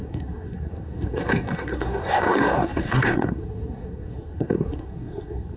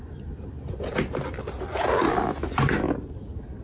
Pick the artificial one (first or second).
first